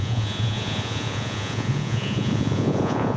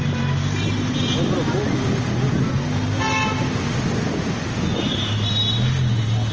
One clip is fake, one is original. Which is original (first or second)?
second